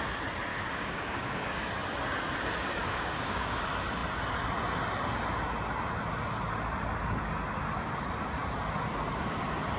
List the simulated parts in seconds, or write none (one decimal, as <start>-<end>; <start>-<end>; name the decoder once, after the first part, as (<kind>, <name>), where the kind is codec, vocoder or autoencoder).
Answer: 0.5-1.7 (codec, DAC); 2.8-3.6

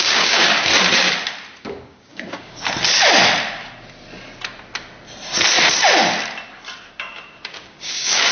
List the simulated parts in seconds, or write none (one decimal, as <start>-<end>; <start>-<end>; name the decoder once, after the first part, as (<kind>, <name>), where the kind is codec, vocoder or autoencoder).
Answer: 0.0-0.7 (codec, DAC); 1.6-2.6; 7.0-8.3

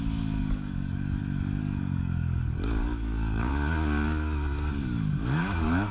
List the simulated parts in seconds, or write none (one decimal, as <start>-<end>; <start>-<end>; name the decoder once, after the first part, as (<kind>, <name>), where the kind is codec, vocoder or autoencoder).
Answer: 0.4-1.2 (codec, DAC); 1.6-3.5; 4.8-5.9

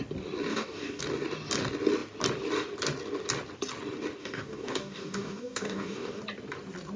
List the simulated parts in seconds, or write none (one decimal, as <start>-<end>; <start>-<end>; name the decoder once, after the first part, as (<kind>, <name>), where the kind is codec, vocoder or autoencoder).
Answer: 0.5-1.0 (codec, DAC); 4.2-6.2

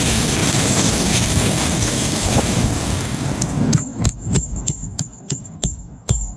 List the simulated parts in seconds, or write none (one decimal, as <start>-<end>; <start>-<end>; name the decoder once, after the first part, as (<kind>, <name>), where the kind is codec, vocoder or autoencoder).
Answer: 0.0-6.4 (codec, DAC)

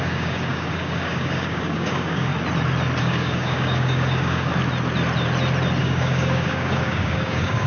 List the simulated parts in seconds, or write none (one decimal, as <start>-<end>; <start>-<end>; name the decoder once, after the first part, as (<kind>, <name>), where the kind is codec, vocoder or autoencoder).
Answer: 0.0-2.3 (codec, DAC); 3.0-4.5; 5.8-7.7

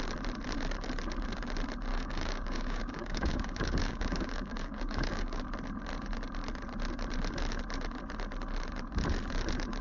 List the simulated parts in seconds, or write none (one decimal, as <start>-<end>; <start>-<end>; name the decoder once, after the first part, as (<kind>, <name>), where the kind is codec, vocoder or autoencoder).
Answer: 1.9-5.4 (codec, DAC)

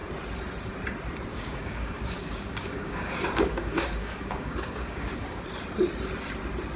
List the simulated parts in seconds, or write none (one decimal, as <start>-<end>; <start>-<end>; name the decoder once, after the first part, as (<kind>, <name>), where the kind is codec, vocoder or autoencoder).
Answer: 1.3-5.4 (codec, DAC)